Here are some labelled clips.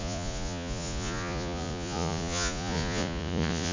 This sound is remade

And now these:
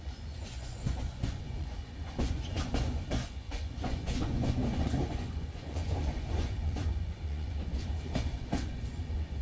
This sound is remade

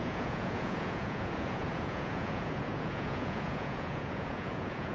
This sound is remade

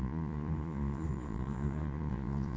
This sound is remade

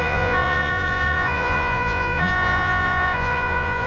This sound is remade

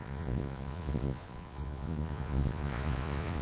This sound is remade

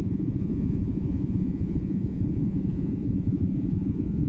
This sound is remade